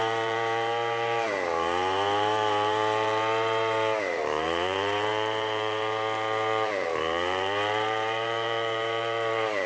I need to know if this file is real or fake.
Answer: fake